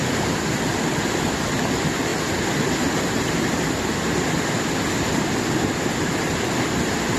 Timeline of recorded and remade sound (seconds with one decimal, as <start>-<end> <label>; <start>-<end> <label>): 0.0-7.2 recorded